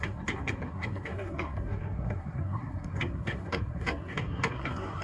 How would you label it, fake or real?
fake